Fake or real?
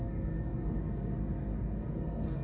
fake